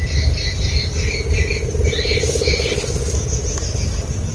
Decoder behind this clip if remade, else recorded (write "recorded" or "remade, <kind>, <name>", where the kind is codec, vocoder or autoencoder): recorded